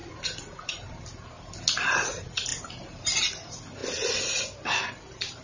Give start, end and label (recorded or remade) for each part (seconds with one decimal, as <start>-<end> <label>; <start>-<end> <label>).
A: 0.0-1.6 remade; 1.6-2.5 recorded; 2.5-3.1 remade; 3.1-5.4 recorded